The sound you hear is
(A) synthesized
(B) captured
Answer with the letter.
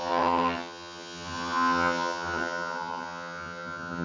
A